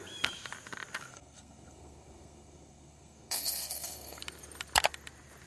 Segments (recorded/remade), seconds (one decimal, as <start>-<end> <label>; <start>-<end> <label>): 0.0-1.1 recorded; 1.1-4.2 remade; 4.2-5.5 recorded